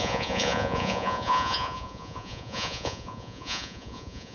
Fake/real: fake